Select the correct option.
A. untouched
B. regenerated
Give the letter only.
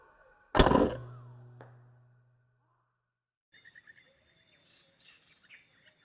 A